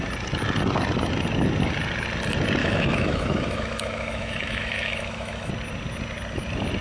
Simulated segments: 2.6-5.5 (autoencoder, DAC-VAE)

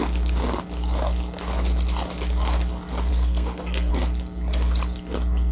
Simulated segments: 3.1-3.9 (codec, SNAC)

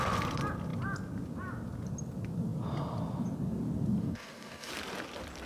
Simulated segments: 4.0-4.7 (codec, DAC)